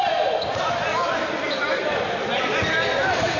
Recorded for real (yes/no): no